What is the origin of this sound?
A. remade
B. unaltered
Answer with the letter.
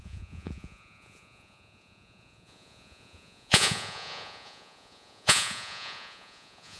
A